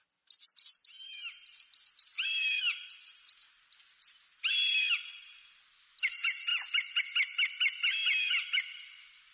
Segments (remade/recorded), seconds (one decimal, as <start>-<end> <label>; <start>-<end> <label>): 0.0-9.3 recorded